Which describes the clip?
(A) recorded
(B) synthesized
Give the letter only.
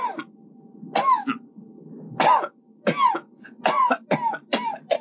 A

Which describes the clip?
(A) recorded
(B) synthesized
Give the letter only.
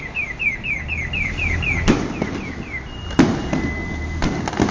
A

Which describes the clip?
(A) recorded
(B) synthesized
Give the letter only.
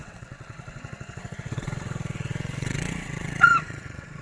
B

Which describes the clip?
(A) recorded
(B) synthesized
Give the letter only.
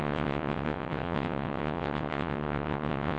B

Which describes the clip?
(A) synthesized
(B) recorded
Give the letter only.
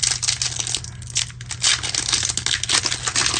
B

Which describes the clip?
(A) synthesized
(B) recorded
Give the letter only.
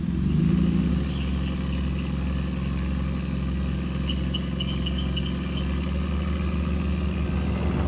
B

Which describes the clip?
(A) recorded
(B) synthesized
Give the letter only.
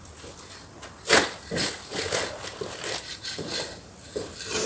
A